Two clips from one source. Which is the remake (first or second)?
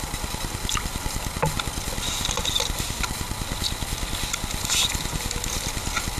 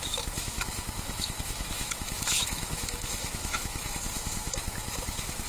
second